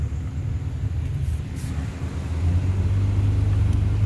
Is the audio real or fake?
real